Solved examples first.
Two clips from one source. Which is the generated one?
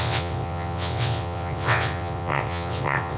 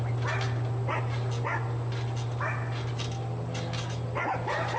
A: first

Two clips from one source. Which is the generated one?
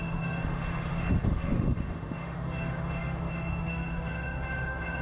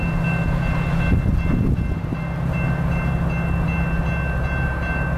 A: first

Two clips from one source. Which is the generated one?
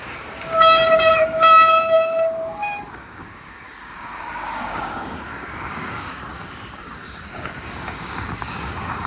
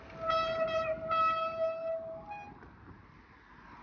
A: first